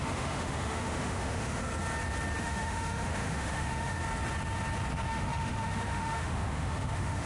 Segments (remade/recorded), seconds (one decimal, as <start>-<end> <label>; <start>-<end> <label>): 0.0-1.6 remade; 1.6-2.4 recorded; 2.4-4.0 remade; 4.0-5.1 recorded; 5.1-7.3 remade